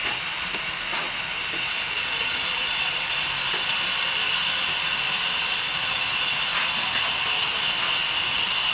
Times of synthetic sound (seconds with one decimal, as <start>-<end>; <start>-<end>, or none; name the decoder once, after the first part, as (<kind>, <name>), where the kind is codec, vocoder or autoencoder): 0.0-4.8 (vocoder, BigVGAN v2); 6.5-7.5